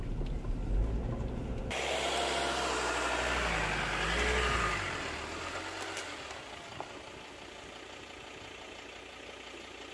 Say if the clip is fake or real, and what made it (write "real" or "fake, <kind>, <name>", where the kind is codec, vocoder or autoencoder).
real